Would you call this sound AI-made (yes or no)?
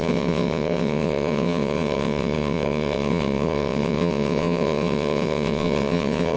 yes